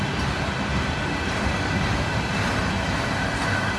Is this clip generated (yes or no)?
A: no